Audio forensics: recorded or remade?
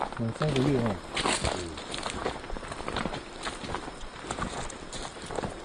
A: recorded